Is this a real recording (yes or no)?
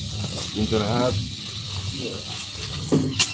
yes